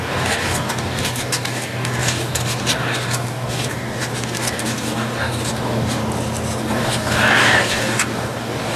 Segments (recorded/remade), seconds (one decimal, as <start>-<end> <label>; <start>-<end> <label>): 0.0-6.0 remade; 6.0-6.6 recorded; 6.6-8.8 remade